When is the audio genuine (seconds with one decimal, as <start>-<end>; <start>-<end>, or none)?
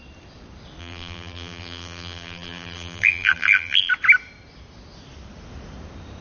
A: 0.0-0.8; 3.9-6.2